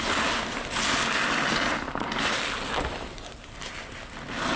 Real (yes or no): yes